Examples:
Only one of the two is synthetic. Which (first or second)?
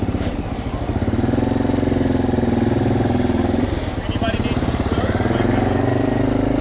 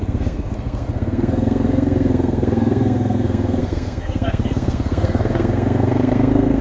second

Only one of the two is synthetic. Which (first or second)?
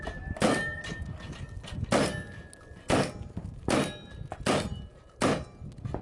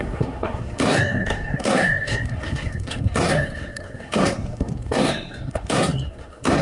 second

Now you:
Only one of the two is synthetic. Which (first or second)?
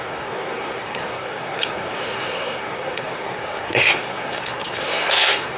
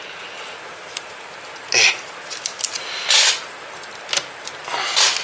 first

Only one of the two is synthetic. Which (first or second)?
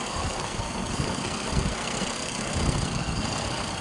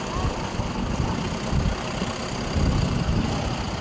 first